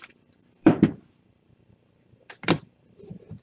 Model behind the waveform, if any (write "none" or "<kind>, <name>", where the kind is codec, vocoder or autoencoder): vocoder, BigVGAN v2